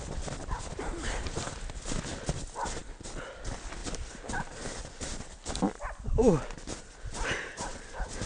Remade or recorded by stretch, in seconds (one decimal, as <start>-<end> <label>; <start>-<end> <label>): 0.0-3.8 recorded; 3.8-6.9 remade; 6.9-8.3 recorded